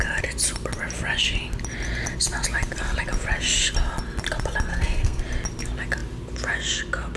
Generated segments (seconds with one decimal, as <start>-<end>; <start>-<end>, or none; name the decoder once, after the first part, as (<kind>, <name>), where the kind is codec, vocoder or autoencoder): 4.7-5.2 (codec, SNAC)